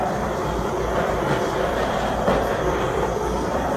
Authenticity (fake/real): fake